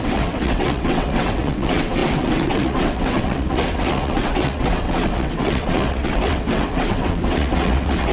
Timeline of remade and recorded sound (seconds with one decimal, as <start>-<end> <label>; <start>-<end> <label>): 0.0-8.1 remade